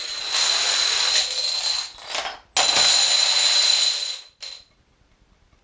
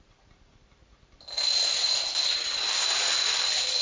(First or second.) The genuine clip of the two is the first